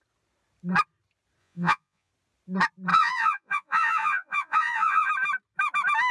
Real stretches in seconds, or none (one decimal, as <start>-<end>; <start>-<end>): 0.0-1.4; 2.1-2.9; 5.1-6.1